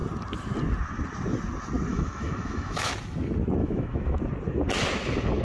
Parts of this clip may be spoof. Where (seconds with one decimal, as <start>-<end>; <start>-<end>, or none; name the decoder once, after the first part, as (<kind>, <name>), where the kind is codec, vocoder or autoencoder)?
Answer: 1.9-2.9 (autoencoder, DAC-VAE); 3.6-4.2